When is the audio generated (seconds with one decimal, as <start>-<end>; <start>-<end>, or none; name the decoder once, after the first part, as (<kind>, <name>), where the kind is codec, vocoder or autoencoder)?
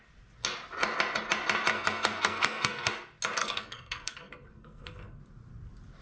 1.7-2.9 (codec, SNAC); 3.4-5.2